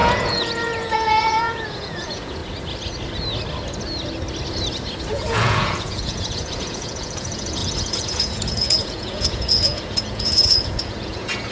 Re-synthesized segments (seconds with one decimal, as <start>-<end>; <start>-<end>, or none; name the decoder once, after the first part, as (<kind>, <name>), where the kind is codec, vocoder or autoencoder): 0.0-2.4 (vocoder, Vocos); 5.1-11.5